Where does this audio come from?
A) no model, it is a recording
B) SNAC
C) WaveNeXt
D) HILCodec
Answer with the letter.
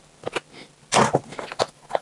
A